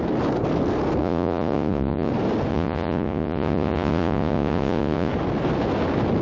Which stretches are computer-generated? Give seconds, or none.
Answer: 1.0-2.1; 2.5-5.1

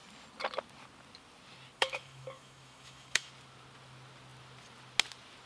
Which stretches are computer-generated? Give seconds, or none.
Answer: 1.8-3.3

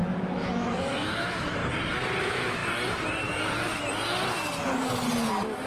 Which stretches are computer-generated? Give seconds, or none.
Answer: 0.0-1.6; 2.2-2.6; 5.3-5.7

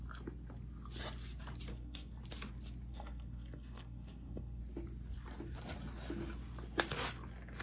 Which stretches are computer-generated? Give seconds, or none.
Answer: 1.7-2.2; 2.9-4.6

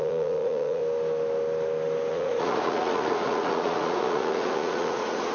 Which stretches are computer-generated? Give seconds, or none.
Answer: 0.0-0.8; 2.1-5.3

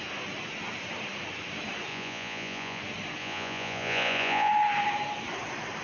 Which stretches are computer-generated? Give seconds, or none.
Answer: 1.9-2.8; 3.2-4.5

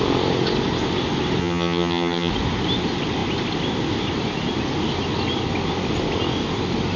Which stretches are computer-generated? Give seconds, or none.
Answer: 1.4-2.3

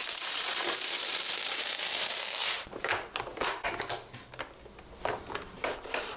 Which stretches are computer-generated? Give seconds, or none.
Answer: 0.0-2.9; 5.4-6.2